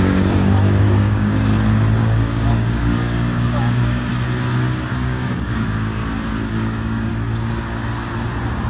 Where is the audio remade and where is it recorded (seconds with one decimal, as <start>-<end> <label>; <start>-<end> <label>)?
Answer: 0.0-1.5 remade; 1.5-2.0 recorded; 2.0-4.1 remade; 4.1-4.9 recorded; 4.9-6.0 remade; 6.0-6.5 recorded; 6.5-7.1 remade; 7.1-8.7 recorded